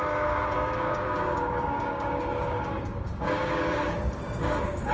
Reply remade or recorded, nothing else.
remade